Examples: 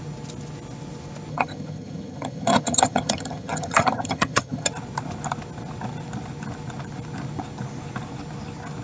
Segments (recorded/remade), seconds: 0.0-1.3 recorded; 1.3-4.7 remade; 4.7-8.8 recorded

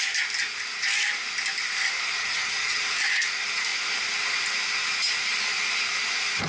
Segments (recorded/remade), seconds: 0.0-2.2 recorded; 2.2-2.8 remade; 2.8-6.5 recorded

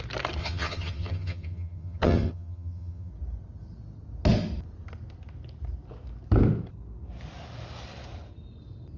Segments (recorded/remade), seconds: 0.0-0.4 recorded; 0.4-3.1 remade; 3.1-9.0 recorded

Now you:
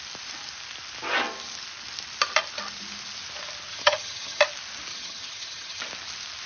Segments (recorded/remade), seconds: 0.0-3.7 recorded; 3.7-4.4 remade; 4.4-4.9 recorded; 4.9-5.8 remade; 5.8-6.5 recorded